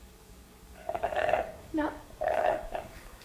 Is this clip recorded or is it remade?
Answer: remade